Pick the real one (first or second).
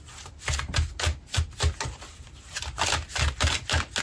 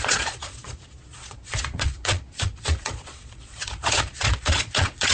first